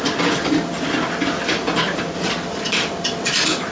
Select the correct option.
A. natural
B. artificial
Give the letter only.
A